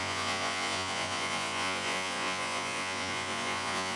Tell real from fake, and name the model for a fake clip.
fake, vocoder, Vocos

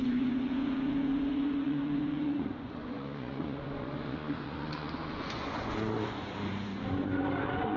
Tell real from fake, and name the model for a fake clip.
fake, vocoder, Vocos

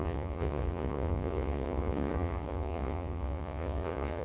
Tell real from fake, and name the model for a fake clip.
fake, vocoder, Vocos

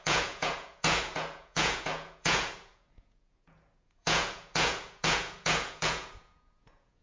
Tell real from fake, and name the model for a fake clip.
fake, vocoder, Vocos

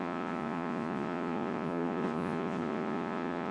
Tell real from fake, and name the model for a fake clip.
fake, vocoder, Vocos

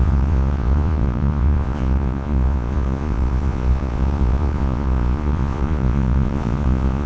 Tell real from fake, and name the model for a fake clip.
fake, vocoder, Vocos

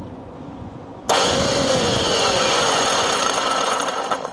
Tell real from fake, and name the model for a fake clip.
fake, vocoder, Vocos